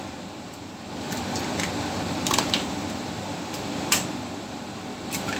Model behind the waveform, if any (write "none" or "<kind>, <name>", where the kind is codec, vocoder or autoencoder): vocoder, BigVGAN v2